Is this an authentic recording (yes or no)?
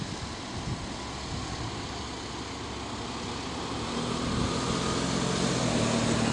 yes